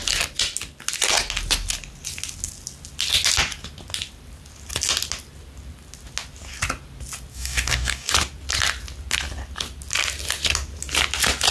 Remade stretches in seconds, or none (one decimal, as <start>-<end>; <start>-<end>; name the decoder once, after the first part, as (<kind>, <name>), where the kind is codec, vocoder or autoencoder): 7.3-8.1 (codec, DAC)